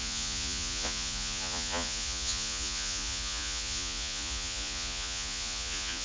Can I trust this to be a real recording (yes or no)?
no